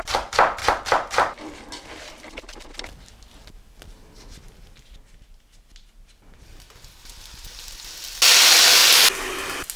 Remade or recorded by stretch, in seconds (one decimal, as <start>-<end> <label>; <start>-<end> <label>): 0.0-9.8 recorded